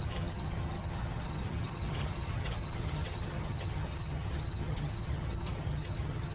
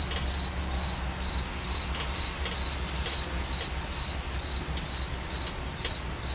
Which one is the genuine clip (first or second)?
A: second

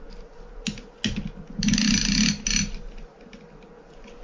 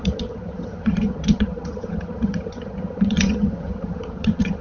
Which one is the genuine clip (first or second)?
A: first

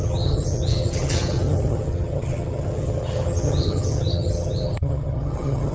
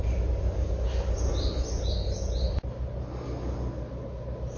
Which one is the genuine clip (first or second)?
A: second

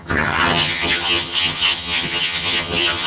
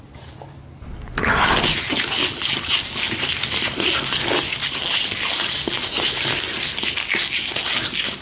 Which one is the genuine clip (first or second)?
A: second